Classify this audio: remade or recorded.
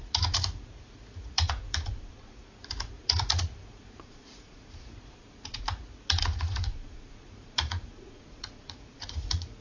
remade